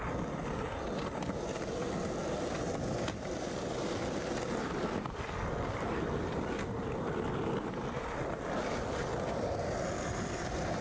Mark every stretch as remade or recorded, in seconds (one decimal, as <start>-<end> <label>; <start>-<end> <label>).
0.0-10.8 recorded

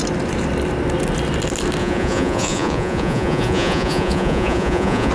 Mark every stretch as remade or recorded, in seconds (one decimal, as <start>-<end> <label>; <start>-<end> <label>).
0.0-1.8 recorded; 1.8-5.1 remade